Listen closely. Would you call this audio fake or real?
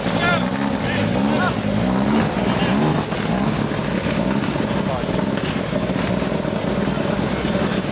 real